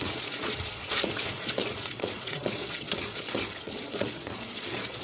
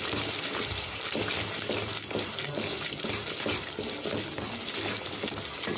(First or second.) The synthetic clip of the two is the first